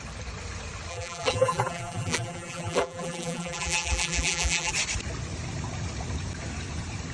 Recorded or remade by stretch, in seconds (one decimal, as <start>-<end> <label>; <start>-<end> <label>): 0.0-0.9 recorded; 0.9-4.7 remade; 4.7-7.1 recorded